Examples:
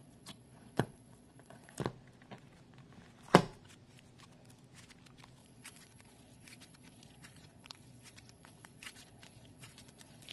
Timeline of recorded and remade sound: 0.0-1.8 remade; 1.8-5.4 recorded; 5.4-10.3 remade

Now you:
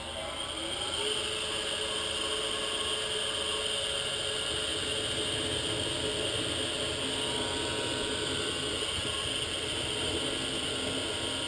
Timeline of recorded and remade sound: 0.0-11.5 recorded

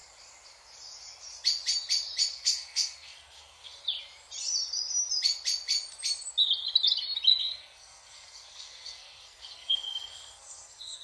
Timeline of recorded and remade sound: 0.0-2.3 recorded; 2.3-3.8 remade; 3.8-7.4 recorded; 7.4-11.0 remade

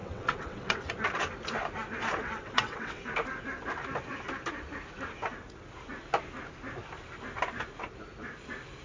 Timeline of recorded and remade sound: 0.0-0.9 remade; 0.9-2.2 recorded; 2.2-3.0 remade; 3.0-8.8 recorded